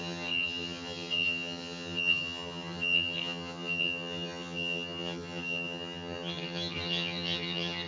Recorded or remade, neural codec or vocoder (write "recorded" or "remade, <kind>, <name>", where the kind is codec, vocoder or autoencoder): remade, vocoder, HiFi-GAN